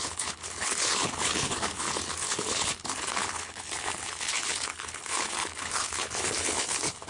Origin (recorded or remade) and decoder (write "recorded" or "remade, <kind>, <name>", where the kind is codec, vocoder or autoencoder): remade, codec, HILCodec